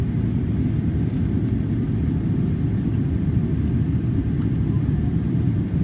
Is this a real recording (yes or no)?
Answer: yes